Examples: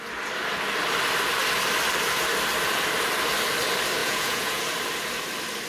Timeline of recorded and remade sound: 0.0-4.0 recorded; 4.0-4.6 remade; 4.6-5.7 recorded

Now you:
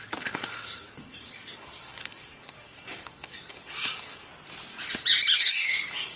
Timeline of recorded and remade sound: 0.0-4.3 remade; 4.3-5.3 recorded; 5.3-6.2 remade

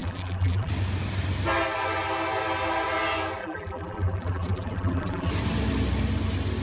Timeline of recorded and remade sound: 0.0-0.7 remade; 0.7-3.4 recorded; 3.4-5.3 remade; 5.3-6.6 recorded

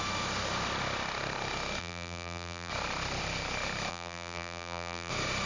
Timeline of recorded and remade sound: 0.0-1.8 recorded; 1.8-2.7 remade; 2.7-3.9 recorded; 3.9-5.1 remade; 5.1-5.5 recorded

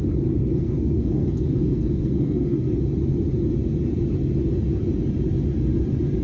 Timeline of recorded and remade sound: 0.0-0.4 recorded; 0.4-2.8 remade; 2.8-6.2 recorded

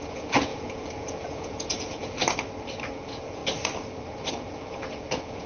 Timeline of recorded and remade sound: 0.0-2.2 remade; 2.2-2.9 recorded; 2.9-3.4 remade; 3.4-4.3 recorded; 4.3-5.5 remade

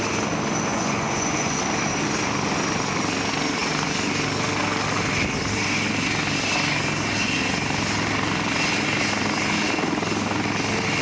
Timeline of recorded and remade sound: 0.0-0.7 recorded; 0.7-1.6 remade; 1.6-11.0 recorded